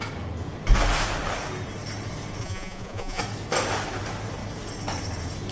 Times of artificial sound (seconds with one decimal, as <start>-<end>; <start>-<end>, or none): 2.4-3.2